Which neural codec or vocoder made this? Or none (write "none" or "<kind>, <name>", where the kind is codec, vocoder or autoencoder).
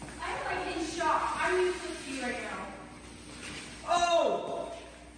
none